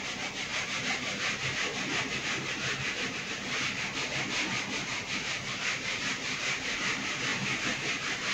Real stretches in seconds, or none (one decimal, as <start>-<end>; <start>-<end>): 7.3-7.9